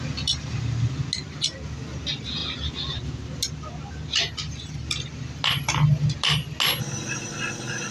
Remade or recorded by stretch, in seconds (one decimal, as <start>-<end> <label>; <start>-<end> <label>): 0.0-7.9 recorded